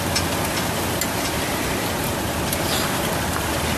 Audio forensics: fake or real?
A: real